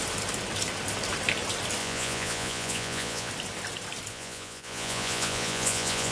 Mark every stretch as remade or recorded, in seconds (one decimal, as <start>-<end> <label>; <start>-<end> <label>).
0.0-1.8 recorded; 1.8-3.3 remade; 3.3-4.1 recorded; 4.1-6.1 remade